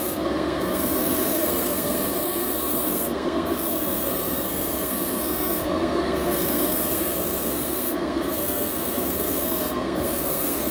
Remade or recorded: remade